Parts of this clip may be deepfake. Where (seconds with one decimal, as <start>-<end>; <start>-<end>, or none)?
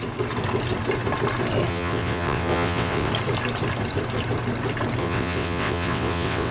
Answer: 1.7-3.1; 5.0-6.5